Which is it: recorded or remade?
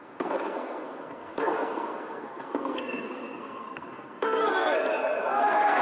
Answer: remade